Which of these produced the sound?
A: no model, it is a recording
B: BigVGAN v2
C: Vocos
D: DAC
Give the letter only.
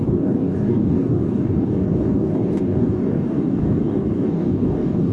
D